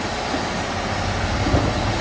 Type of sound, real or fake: real